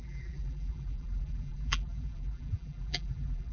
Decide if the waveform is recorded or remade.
remade